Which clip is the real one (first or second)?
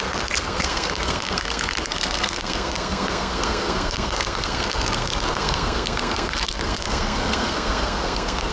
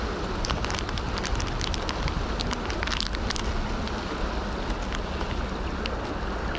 second